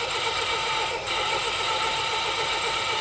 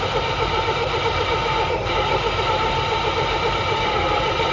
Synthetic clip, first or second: second